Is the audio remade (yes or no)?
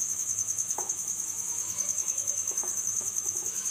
yes